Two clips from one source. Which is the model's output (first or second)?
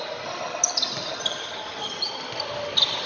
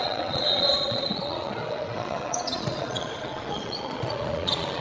second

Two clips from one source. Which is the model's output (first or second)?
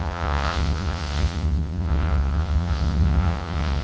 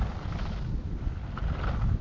first